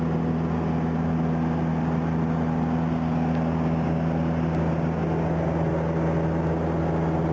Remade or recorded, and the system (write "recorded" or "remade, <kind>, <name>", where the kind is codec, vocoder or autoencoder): recorded